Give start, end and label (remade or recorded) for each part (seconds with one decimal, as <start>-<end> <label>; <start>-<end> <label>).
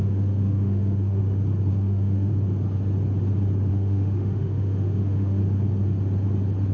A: 0.0-1.2 remade; 1.2-1.7 recorded; 1.7-2.3 remade; 2.3-3.7 recorded; 3.7-5.4 remade; 5.4-6.7 recorded